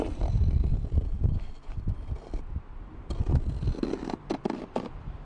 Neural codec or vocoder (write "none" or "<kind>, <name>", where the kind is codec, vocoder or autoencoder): none